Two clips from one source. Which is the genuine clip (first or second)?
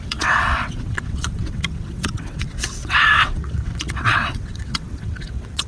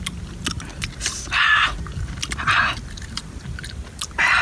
second